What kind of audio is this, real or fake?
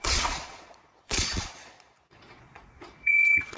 fake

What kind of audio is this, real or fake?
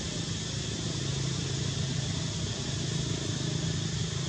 real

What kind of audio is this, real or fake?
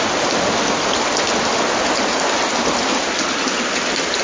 real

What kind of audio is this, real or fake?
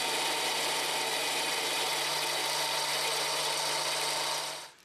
real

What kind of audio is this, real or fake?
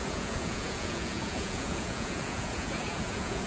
fake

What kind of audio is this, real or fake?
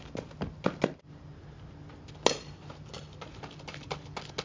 real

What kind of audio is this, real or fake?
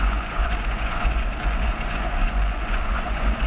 fake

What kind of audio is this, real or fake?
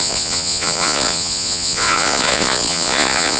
fake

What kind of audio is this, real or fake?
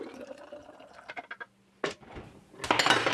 real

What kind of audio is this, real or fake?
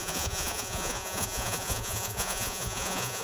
fake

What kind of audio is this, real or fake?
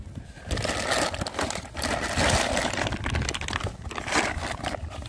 real